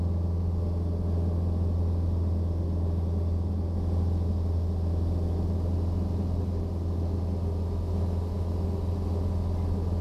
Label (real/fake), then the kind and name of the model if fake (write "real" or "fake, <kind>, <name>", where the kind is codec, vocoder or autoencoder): real